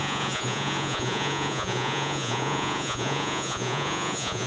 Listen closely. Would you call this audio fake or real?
fake